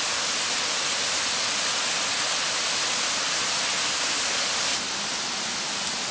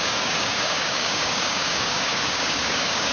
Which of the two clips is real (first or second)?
first